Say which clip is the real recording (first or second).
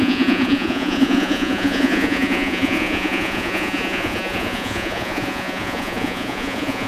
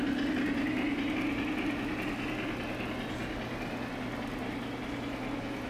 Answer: second